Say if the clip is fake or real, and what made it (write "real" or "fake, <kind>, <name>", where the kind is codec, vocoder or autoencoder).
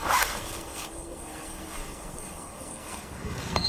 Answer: fake, codec, SNAC